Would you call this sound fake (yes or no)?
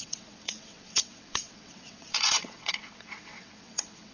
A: yes